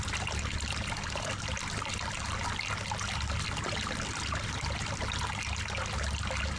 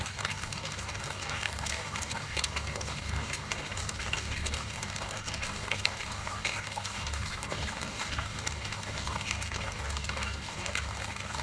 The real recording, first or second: first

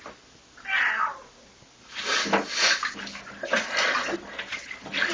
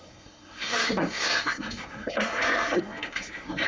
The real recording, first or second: first